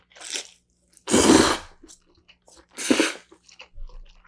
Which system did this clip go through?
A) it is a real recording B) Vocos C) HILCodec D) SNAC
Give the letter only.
A